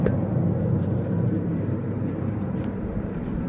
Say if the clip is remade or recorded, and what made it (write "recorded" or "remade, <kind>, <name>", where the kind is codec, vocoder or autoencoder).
remade, vocoder, BigVGAN v2